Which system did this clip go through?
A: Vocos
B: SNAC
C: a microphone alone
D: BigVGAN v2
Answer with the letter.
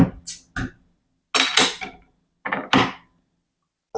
C